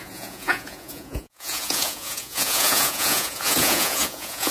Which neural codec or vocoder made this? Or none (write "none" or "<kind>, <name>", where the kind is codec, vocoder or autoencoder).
vocoder, Vocos